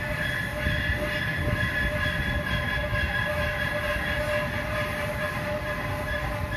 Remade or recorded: recorded